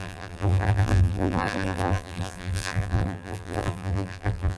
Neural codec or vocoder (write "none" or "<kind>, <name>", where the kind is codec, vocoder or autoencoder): vocoder, BigVGAN v2